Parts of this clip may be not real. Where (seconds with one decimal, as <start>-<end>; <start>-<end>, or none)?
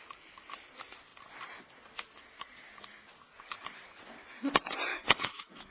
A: 4.9-5.7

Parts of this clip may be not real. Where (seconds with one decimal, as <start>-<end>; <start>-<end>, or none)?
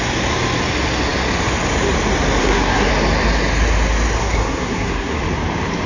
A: 2.4-2.9; 4.2-5.2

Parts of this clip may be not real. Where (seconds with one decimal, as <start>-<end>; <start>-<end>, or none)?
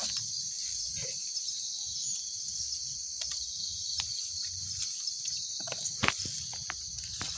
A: 0.6-1.8; 3.0-4.6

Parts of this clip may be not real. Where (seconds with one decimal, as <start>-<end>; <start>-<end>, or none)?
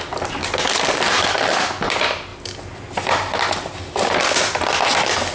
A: none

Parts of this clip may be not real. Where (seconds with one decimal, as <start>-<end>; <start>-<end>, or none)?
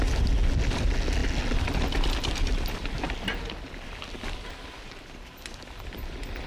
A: none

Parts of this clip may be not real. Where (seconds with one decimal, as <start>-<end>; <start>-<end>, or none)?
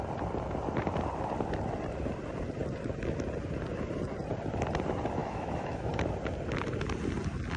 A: 5.2-5.9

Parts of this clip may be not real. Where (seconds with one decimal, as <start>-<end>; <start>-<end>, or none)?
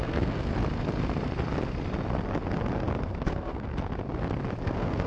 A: 0.0-0.5; 3.0-3.7; 4.6-5.1